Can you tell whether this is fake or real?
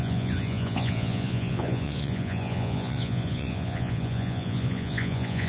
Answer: fake